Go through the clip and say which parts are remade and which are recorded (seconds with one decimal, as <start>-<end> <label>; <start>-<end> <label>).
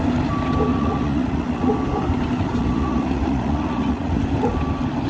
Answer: 0.0-0.7 recorded; 0.7-1.7 remade; 1.7-2.6 recorded; 2.6-4.2 remade; 4.2-5.1 recorded